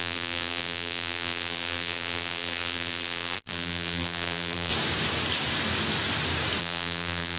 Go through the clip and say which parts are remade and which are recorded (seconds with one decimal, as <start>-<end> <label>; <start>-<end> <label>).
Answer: 0.0-4.7 remade; 4.7-6.6 recorded; 6.6-7.4 remade